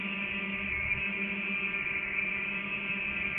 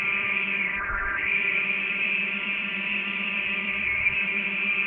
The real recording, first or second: first